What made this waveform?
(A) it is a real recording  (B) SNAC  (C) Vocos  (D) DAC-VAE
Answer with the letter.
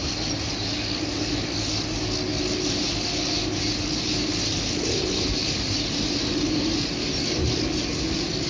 A